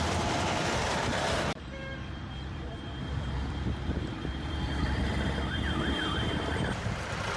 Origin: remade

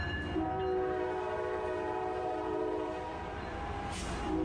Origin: remade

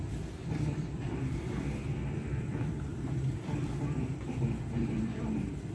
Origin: remade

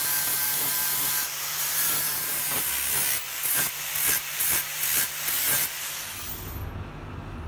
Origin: recorded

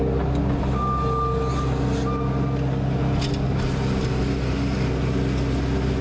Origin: recorded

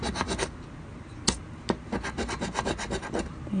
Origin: recorded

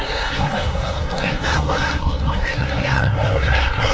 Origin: remade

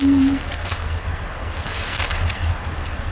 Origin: remade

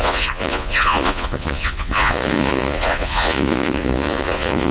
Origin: remade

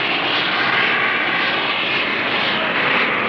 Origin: recorded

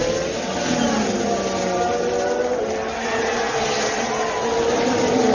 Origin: recorded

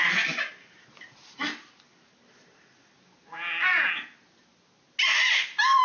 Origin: recorded